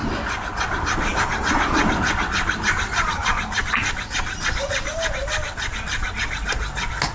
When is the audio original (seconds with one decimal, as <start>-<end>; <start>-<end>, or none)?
0.0-7.1